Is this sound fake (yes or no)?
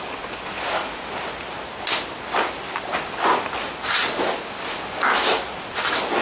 no